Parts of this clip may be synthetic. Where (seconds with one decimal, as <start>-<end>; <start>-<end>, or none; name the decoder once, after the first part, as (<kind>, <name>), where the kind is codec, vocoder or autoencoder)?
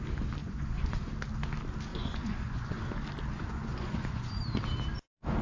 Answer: 0.4-1.1 (vocoder, Vocos); 1.9-2.8; 3.3-4.4